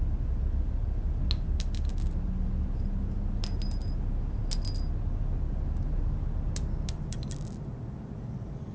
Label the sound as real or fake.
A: real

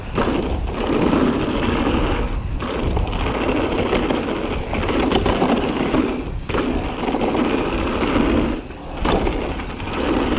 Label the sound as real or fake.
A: real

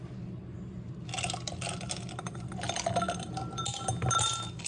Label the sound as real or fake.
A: real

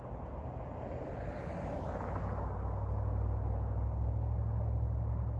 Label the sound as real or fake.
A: real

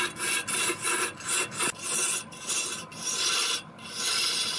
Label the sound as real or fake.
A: real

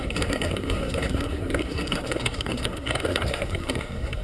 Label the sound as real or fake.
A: fake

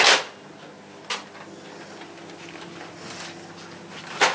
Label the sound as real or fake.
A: real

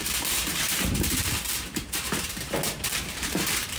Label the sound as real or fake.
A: fake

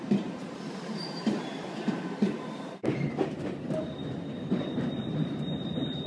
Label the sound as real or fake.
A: fake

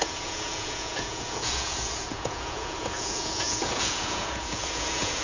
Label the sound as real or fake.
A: fake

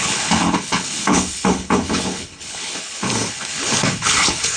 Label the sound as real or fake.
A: fake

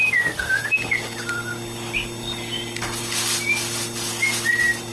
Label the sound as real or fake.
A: real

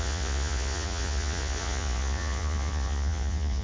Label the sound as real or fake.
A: fake